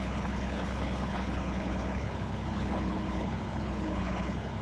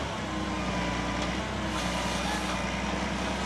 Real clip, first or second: second